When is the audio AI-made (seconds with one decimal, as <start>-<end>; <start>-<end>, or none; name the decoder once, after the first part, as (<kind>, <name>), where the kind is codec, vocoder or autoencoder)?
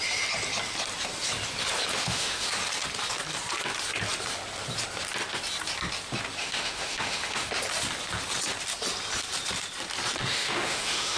1.9-2.5 (autoencoder, DAC-VAE); 6.4-7.5; 10.3-11.2